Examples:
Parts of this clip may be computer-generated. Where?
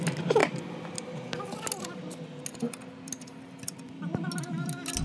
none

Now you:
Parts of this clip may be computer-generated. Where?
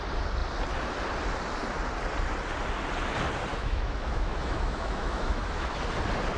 3.5-5.8 (autoencoder, DAC-VAE)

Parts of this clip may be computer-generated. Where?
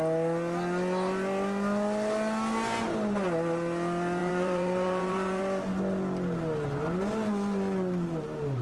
4.2-5.4 (vocoder, BigVGAN v2)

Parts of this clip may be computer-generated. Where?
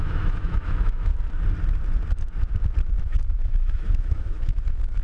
0.0-1.1 (autoencoder, DAC-VAE); 3.0-5.0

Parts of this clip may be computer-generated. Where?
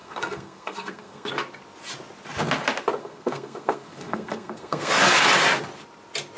0.0-1.3 (codec, SNAC); 3.0-4.9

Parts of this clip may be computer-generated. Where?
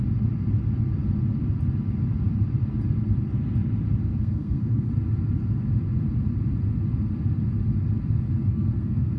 4.1-4.9 (codec, SNAC); 8.5-9.2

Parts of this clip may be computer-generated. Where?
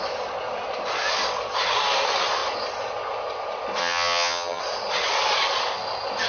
3.8-4.6 (vocoder, HiFi-GAN)